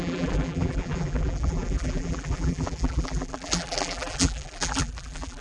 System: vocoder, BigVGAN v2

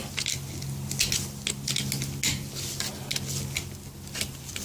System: none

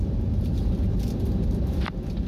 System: vocoder, BigVGAN v2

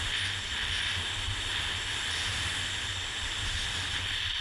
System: none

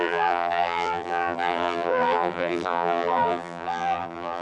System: vocoder, BigVGAN v2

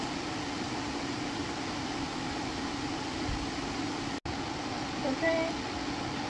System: none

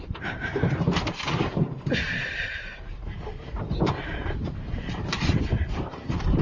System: vocoder, BigVGAN v2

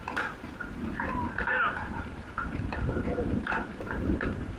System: vocoder, BigVGAN v2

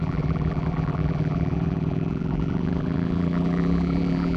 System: vocoder, BigVGAN v2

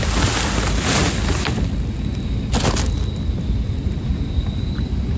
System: none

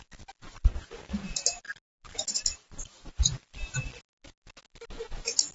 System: none